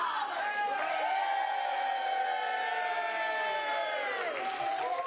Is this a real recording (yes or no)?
yes